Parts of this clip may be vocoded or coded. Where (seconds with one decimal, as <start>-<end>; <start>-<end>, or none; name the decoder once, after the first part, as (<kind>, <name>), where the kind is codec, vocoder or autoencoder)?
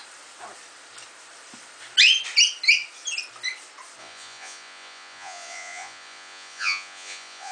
4.0-7.5 (vocoder, Vocos)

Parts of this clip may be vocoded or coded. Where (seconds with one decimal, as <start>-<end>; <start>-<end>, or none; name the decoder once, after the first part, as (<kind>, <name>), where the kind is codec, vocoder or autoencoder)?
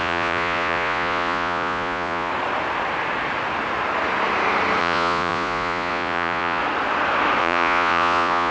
0.0-2.3 (vocoder, Vocos); 4.8-6.6; 7.4-8.5